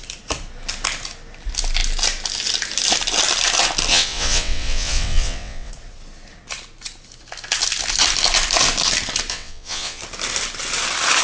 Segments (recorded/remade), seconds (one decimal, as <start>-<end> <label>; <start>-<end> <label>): 0.0-3.9 recorded; 3.9-5.7 remade; 5.7-9.3 recorded; 9.3-10.0 remade; 10.0-11.2 recorded